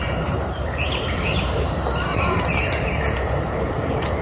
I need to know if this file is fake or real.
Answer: fake